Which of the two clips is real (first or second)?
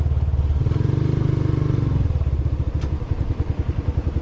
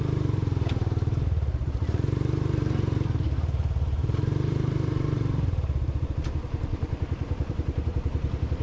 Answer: first